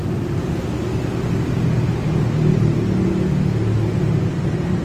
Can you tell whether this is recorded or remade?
recorded